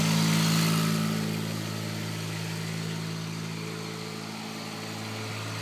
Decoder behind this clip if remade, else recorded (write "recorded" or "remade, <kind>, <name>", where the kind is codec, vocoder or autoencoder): recorded